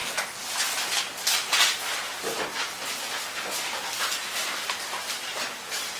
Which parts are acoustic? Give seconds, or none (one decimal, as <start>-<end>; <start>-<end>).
0.0-6.0